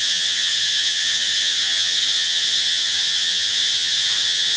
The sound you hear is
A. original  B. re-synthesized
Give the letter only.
B